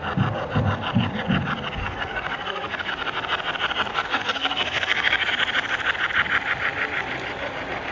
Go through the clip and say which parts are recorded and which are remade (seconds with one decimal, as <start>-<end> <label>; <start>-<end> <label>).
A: 0.0-1.8 recorded; 1.8-2.9 remade; 2.9-3.9 recorded; 3.9-5.3 remade; 5.3-7.9 recorded

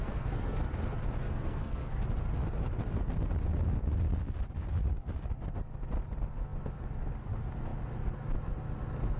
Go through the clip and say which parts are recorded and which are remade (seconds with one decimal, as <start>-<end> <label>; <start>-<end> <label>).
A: 0.0-0.6 remade; 0.6-1.2 recorded; 1.2-2.0 remade; 2.0-9.2 recorded

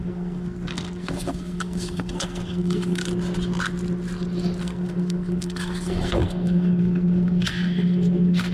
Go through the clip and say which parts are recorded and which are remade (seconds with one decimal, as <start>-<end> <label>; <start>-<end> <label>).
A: 0.0-3.0 remade; 3.0-4.6 recorded; 4.6-8.5 remade